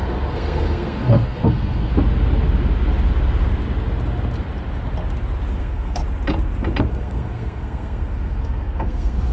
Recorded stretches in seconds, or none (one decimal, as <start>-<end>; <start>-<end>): 1.9-5.6; 6.0-6.9